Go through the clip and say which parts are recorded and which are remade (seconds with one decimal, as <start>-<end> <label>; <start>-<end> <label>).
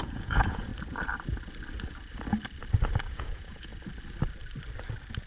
0.0-0.7 remade; 0.7-3.1 recorded; 3.1-3.7 remade; 3.7-5.3 recorded